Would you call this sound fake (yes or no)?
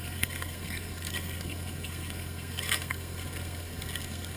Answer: yes